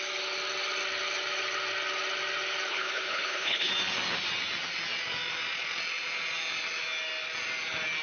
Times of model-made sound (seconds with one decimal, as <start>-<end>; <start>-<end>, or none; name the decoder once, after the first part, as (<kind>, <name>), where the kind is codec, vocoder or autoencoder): 2.7-3.7 (codec, HILCodec)